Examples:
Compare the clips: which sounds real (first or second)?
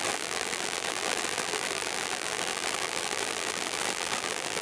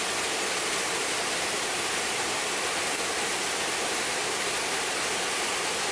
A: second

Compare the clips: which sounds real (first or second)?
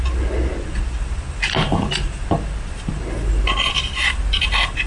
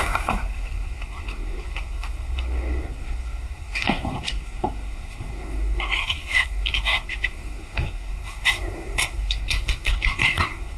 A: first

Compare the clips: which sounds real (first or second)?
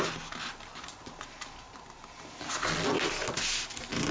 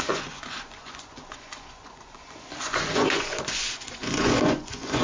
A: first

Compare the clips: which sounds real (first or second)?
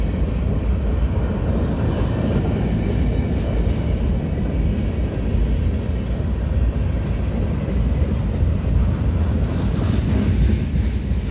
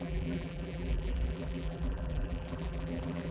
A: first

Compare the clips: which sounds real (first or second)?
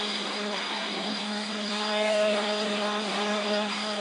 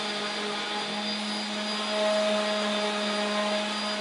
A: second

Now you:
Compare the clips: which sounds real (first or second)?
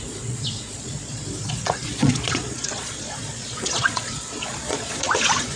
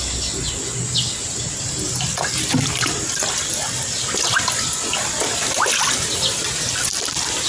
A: second